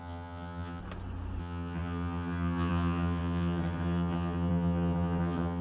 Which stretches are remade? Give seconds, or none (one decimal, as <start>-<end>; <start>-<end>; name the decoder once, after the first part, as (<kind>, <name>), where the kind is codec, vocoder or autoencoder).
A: 0.0-0.8 (vocoder, HiFi-GAN); 1.4-5.6